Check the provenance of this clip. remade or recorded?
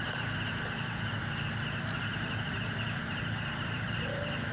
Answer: recorded